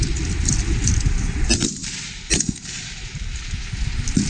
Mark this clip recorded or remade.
recorded